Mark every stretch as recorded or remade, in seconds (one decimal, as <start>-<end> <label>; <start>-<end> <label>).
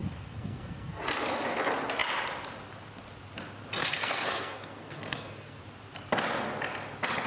0.0-1.0 remade; 1.0-3.8 recorded; 3.8-5.6 remade; 5.6-7.3 recorded